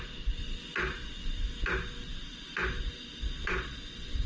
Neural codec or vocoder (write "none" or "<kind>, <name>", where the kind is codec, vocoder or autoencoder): none